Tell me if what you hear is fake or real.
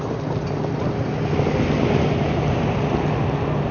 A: real